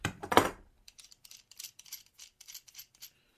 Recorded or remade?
remade